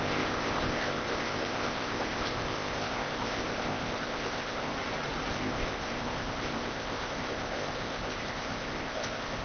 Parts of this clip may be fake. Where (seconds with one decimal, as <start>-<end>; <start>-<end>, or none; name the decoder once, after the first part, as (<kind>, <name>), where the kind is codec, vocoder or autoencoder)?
0.0-4.7 (codec, ZipCodec); 5.3-9.4